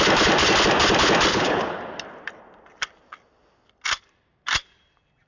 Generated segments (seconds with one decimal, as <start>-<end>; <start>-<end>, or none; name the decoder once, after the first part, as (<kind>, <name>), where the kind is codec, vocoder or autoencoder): 1.3-1.8 (codec, HILCodec)